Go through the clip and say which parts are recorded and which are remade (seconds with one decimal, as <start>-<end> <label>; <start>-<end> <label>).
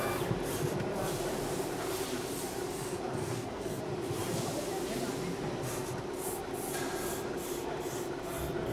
0.0-3.2 recorded; 3.2-3.8 remade; 3.8-8.7 recorded